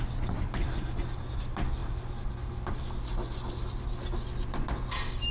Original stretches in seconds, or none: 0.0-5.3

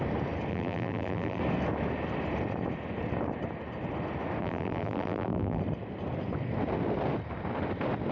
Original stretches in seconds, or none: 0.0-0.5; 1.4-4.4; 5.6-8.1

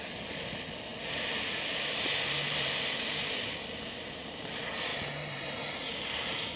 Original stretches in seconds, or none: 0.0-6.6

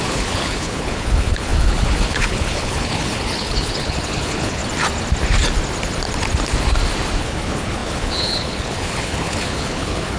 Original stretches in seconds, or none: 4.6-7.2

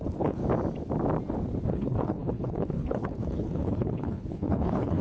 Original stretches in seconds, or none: 0.4-1.7

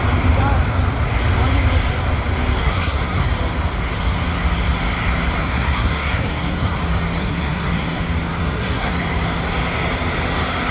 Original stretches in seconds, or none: 0.0-2.6; 3.2-5.4; 6.8-7.2; 8.0-8.4; 9.0-10.7

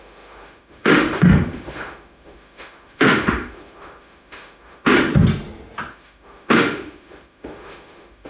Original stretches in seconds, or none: 5.1-5.9

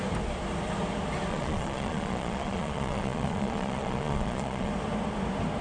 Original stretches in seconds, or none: 0.0-1.3; 4.7-5.6